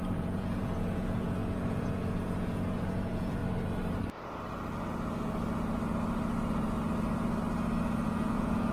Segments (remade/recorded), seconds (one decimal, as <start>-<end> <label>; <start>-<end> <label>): 0.0-3.4 remade; 3.4-8.2 recorded; 8.2-8.7 remade